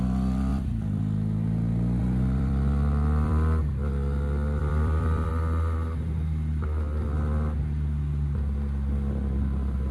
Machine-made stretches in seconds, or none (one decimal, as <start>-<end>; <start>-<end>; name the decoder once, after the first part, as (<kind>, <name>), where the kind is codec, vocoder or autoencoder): 0.5-1.0 (vocoder, BigVGAN v2); 2.0-3.6; 4.6-5.3